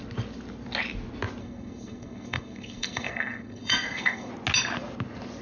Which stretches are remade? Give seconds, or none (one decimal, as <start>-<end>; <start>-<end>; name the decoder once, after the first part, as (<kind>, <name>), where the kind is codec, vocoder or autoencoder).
1.4-4.3 (codec, SNAC)